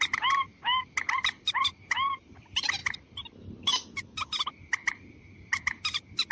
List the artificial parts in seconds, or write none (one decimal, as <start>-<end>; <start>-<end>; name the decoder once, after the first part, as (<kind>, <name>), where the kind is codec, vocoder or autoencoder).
none